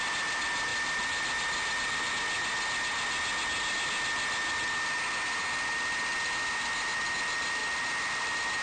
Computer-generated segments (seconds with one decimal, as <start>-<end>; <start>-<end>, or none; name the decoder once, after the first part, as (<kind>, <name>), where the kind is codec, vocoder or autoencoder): 0.7-2.1 (vocoder, BigVGAN v2)